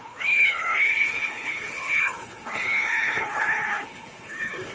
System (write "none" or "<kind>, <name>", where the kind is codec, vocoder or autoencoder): codec, HILCodec